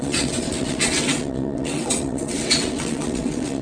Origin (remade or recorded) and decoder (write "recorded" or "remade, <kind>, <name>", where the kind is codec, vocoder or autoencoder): remade, vocoder, WaveNeXt